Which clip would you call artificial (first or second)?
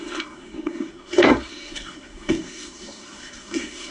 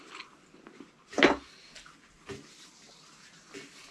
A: first